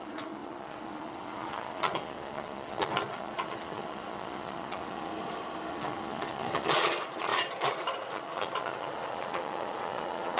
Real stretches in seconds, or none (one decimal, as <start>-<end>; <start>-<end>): 5.1-5.7